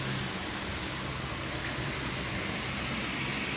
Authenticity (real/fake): real